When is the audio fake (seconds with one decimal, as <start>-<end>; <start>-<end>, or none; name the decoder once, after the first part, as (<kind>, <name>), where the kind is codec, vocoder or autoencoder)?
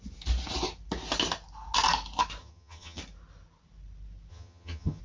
2.4-3.0 (vocoder, HiFi-GAN); 4.3-5.0